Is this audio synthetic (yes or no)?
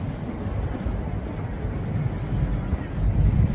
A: no